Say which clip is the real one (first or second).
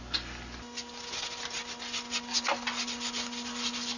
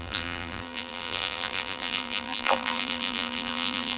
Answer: first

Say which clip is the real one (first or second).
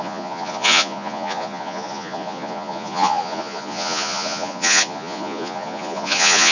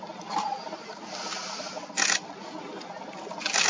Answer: second